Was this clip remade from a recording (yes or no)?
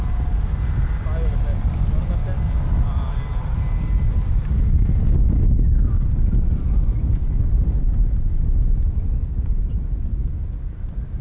no